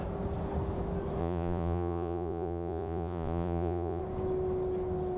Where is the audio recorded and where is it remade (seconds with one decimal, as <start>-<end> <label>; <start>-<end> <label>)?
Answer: 0.0-1.2 recorded; 1.2-4.0 remade; 4.0-5.2 recorded